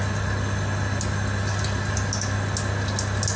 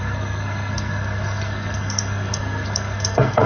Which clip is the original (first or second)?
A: first